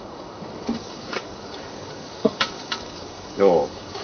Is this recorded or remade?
remade